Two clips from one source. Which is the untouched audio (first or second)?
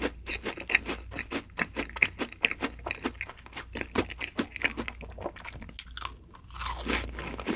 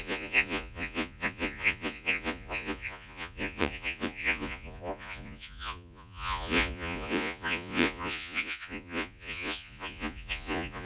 first